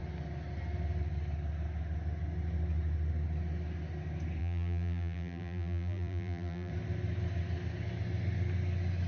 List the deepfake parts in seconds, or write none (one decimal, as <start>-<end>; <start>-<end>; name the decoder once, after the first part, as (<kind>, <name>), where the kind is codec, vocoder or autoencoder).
4.4-6.7 (vocoder, BigVGAN v2)